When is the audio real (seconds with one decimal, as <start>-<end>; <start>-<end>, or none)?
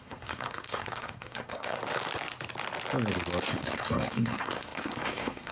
1.8-3.4